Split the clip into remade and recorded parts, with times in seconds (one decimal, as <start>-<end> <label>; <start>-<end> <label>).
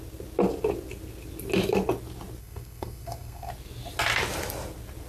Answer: 0.0-2.4 recorded; 2.4-3.5 remade; 3.5-5.1 recorded